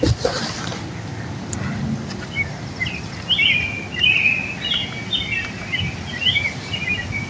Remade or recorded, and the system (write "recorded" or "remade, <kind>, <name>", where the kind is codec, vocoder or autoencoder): recorded